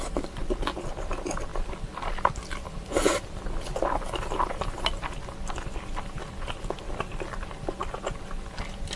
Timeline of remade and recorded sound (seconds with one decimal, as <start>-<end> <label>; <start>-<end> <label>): 0.0-9.0 recorded